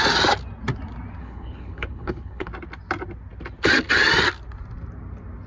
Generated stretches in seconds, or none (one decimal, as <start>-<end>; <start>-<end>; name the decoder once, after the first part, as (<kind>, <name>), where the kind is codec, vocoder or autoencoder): 1.2-2.5 (codec, HILCodec)